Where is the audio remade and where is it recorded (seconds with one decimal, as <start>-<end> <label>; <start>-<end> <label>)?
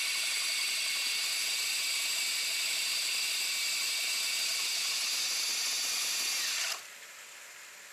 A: 0.0-7.9 recorded